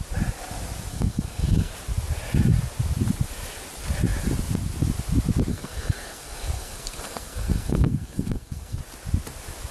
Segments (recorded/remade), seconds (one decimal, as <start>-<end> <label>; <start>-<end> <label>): 0.0-0.9 recorded; 0.9-1.7 remade; 1.7-5.5 recorded; 5.5-8.8 remade; 8.8-9.7 recorded